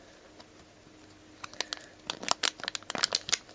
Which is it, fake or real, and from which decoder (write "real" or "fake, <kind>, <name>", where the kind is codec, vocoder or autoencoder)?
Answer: real